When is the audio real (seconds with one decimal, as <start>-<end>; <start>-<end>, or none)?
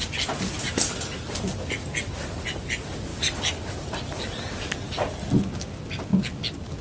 0.0-6.8